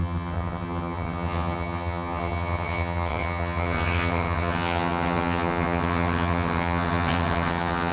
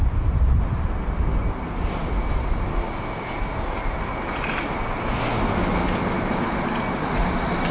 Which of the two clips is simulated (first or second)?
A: first